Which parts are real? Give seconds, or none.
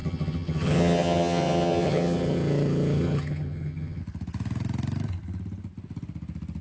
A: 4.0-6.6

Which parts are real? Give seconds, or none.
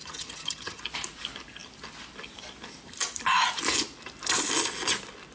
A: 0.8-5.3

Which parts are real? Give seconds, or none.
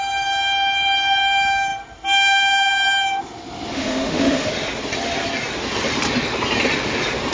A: 0.0-3.7; 4.5-7.3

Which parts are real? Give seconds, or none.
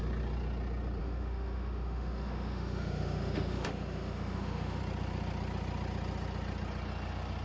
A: 0.0-1.0; 4.8-7.4